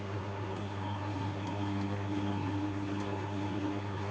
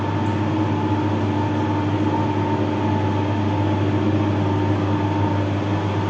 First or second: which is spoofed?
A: first